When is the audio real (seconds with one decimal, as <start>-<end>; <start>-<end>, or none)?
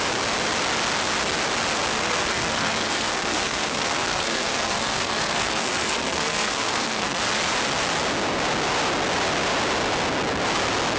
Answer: 0.0-2.0; 7.2-11.0